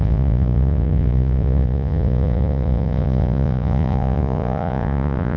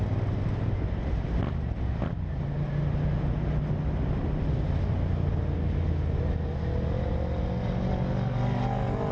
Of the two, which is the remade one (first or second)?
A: first